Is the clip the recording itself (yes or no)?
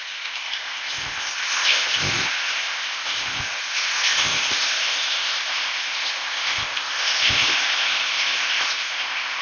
no